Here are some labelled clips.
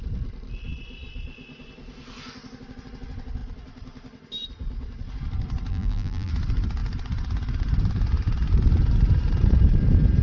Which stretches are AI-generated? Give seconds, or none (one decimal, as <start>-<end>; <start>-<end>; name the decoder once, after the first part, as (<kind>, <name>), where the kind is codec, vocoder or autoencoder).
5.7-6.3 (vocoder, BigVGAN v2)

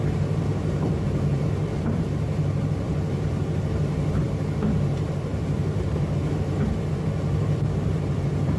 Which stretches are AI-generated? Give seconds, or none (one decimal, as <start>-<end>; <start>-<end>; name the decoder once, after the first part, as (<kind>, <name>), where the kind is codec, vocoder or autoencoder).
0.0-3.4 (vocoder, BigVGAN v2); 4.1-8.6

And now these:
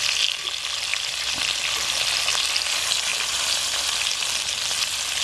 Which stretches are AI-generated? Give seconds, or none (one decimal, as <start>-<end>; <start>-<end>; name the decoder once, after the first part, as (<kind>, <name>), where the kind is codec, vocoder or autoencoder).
0.9-2.0 (vocoder, BigVGAN v2); 3.1-3.8

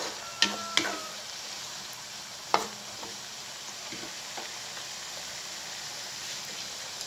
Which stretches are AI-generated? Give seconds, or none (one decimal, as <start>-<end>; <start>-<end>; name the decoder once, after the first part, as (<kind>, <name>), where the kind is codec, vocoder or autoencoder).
1.0-4.2 (vocoder, BigVGAN v2); 5.9-7.1